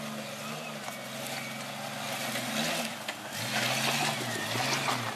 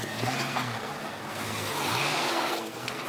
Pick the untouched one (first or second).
first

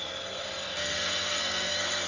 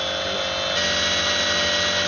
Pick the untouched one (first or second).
second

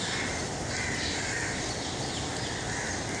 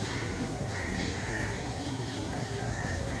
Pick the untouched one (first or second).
first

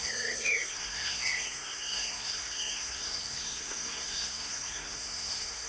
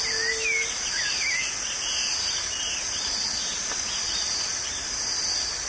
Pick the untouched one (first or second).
second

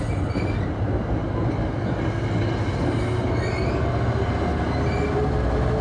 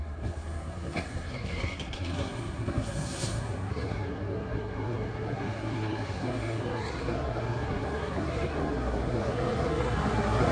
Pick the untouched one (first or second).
first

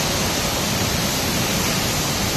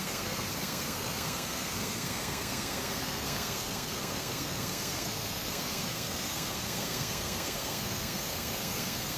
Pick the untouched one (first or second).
first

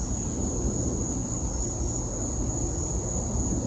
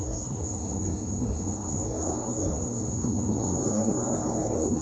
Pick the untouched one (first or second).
first